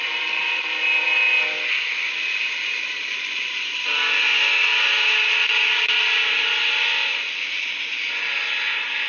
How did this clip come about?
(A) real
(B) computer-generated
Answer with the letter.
A